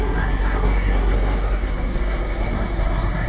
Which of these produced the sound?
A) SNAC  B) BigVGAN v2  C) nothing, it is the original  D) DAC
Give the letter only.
A